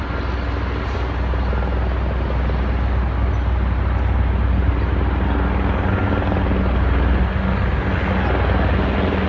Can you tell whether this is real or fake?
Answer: real